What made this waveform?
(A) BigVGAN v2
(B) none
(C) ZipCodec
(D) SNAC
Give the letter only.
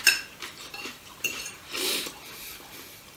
A